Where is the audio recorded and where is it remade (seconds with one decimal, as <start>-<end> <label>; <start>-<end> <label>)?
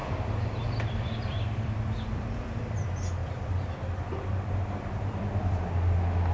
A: 0.0-2.6 remade; 2.6-3.2 recorded; 3.2-5.6 remade; 5.6-6.3 recorded